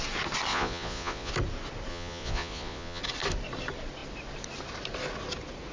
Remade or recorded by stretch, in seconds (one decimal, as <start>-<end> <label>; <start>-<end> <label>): 0.0-0.5 recorded; 0.5-1.3 remade; 1.3-1.9 recorded; 1.9-3.0 remade; 3.0-5.7 recorded